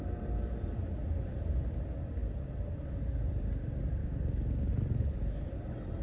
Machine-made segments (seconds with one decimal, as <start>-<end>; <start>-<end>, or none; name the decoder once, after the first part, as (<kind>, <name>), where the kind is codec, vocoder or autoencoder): 4.0-4.7 (codec, DAC)